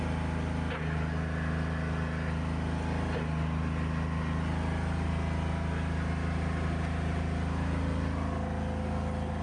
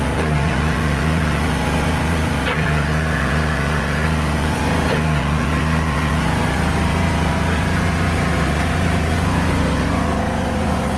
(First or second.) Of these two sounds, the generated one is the second